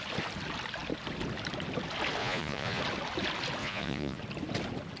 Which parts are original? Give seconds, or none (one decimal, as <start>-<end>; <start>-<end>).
0.0-2.2; 2.8-3.6; 4.2-5.0